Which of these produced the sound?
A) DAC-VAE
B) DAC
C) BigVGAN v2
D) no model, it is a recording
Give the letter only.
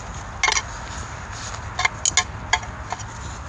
D